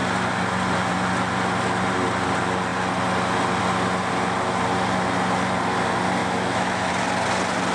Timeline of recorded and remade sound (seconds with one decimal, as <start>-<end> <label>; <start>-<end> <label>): 0.0-6.2 recorded; 6.2-6.9 remade; 6.9-7.7 recorded